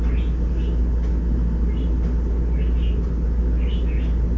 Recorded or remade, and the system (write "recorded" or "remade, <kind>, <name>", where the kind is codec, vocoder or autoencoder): recorded